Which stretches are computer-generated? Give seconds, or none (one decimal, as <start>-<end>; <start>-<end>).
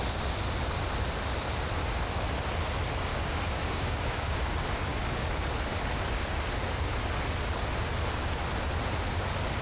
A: 3.1-5.3